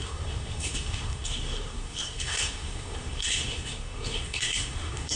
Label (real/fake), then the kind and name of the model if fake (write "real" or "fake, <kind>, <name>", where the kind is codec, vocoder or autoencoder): fake, codec, SNAC